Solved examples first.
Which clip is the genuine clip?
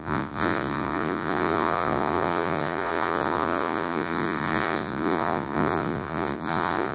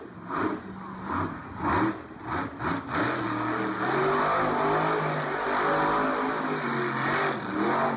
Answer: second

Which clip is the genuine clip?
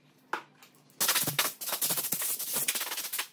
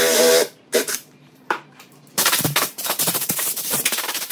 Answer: first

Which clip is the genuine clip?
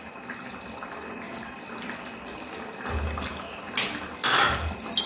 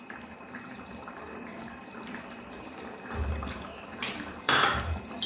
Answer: first